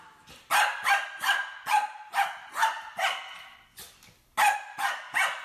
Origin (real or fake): real